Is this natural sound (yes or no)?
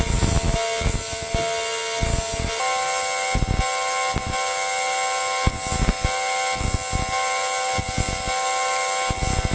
yes